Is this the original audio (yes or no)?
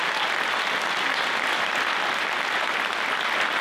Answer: yes